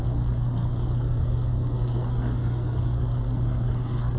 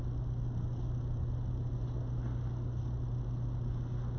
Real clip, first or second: second